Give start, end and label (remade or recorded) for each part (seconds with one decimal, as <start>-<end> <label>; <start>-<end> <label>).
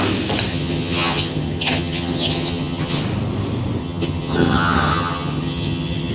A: 0.0-0.5 recorded; 0.5-3.0 remade; 3.0-3.8 recorded; 3.8-6.1 remade